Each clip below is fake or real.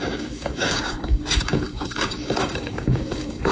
fake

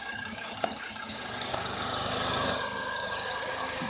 fake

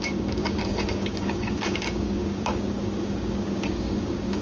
fake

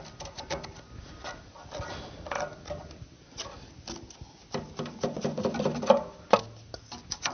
real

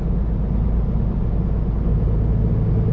real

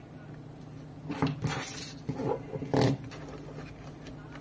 real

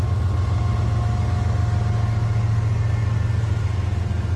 real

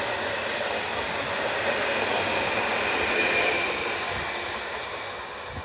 real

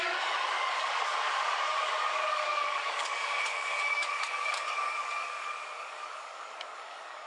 fake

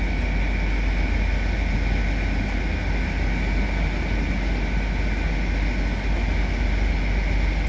real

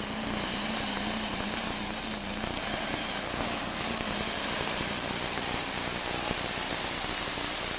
real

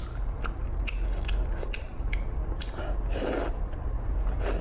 real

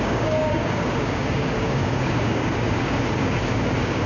fake